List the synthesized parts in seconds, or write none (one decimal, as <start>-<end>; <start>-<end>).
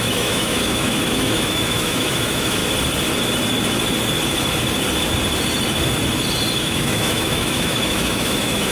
0.0-2.6; 6.6-8.7